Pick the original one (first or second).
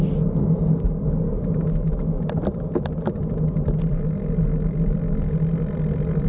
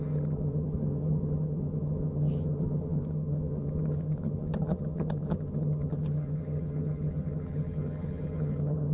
first